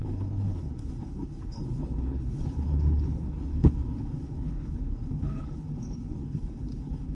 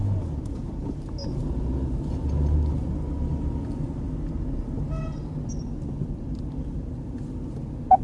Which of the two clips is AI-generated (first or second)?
first